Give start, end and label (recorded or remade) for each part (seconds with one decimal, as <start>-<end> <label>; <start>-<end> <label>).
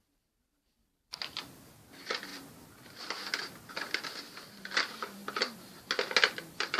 0.0-5.2 recorded; 5.2-5.8 remade; 5.8-6.8 recorded